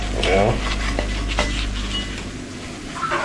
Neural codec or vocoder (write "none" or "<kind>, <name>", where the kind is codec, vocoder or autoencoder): none